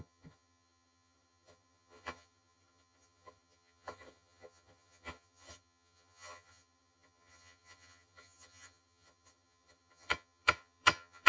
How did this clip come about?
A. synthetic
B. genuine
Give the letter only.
A